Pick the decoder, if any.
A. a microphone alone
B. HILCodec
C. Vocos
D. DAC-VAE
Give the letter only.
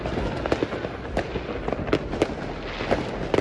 A